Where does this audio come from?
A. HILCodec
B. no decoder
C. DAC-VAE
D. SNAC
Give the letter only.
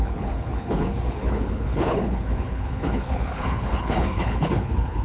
A